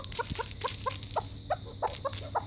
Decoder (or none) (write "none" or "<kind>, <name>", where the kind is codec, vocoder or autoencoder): none